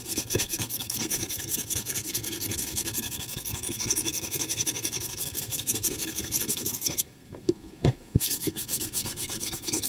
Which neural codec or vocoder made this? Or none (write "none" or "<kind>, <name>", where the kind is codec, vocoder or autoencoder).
codec, SNAC